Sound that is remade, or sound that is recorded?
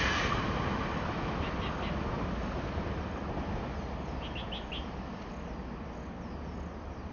recorded